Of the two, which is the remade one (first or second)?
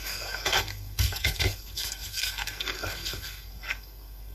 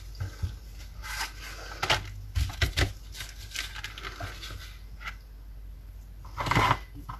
first